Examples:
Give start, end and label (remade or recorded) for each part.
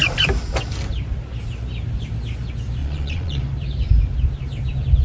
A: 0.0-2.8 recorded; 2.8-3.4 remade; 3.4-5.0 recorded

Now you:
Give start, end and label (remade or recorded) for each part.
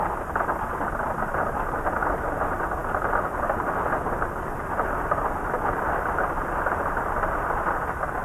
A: 0.0-8.2 recorded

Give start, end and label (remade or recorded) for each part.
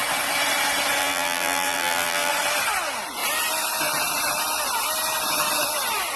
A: 0.0-1.0 recorded; 1.0-2.3 remade; 2.3-6.2 recorded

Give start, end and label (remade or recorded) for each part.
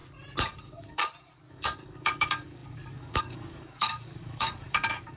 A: 0.0-0.6 recorded; 0.6-1.0 remade; 1.0-1.5 recorded; 1.5-5.2 remade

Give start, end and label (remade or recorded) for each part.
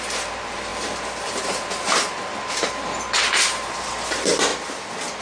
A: 0.0-4.5 remade; 4.5-5.2 recorded